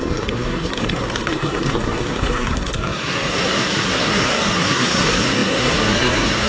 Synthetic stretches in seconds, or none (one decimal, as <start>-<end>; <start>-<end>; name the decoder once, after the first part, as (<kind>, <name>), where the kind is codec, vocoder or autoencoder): 0.0-6.5 (codec, SNAC)